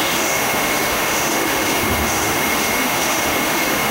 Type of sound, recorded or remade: remade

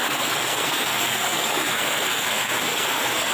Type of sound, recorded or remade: remade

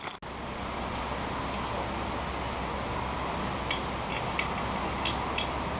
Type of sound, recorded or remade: recorded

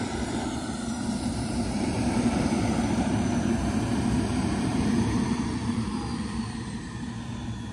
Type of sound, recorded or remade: remade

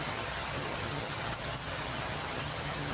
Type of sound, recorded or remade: remade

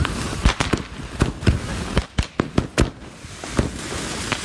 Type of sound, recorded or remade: recorded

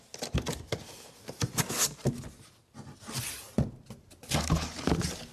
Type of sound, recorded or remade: recorded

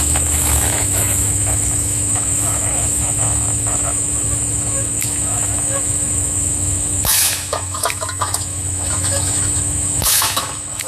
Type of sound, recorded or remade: remade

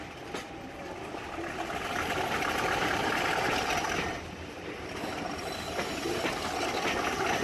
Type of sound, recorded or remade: recorded